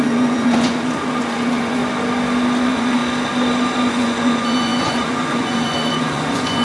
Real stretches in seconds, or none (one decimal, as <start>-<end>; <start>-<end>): 1.8-2.6; 3.0-3.9